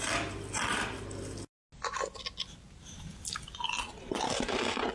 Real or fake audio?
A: real